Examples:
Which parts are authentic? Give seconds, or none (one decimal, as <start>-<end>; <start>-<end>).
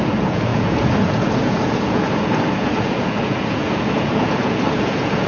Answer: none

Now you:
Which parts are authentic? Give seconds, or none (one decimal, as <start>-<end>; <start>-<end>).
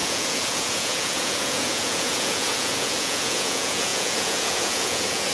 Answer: none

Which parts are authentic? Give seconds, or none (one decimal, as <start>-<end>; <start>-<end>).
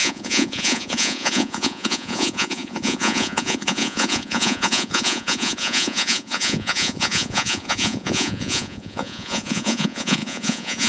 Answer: none